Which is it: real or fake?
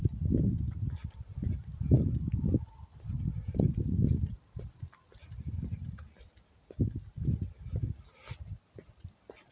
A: real